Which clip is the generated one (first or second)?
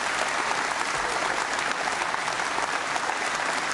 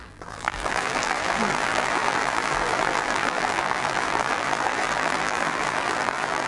second